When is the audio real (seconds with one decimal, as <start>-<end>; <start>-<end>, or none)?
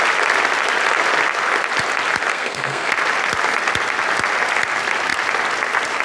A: 0.0-2.3; 2.9-6.0